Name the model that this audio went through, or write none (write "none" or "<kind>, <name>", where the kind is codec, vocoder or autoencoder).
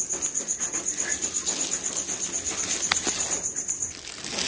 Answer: none